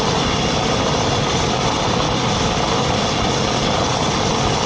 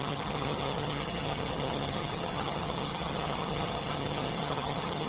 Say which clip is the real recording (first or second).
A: first